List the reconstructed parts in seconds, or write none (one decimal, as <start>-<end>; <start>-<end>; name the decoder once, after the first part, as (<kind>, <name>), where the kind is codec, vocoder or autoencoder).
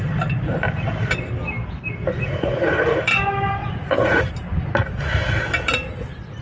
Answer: 2.1-3.0 (vocoder, Vocos); 3.6-4.2